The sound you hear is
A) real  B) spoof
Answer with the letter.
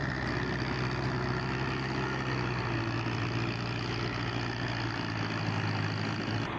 A